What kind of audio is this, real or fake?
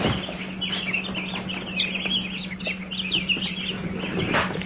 real